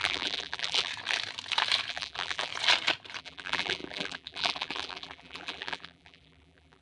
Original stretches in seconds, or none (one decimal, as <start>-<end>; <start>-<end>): 0.9-1.9; 2.5-3.2